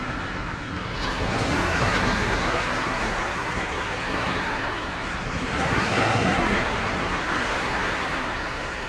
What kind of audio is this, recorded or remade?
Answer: remade